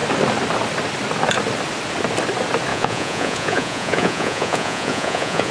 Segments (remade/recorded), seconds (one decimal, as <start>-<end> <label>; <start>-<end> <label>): 0.0-2.7 recorded; 2.7-5.5 remade